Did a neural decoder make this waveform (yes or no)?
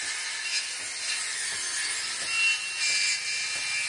no